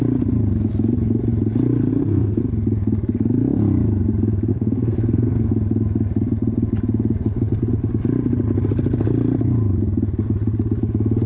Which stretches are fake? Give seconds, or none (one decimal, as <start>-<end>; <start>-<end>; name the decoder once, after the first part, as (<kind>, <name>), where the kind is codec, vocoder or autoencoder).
1.9-2.4 (codec, SNAC); 4.5-5.5